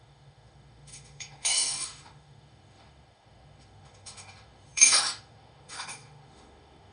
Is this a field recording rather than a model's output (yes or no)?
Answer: no